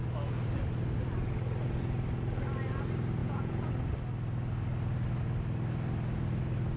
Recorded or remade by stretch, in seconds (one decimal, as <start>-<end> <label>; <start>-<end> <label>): 0.0-3.2 recorded; 3.2-3.7 remade; 3.7-6.8 recorded